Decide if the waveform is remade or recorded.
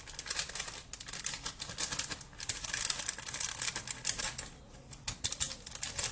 recorded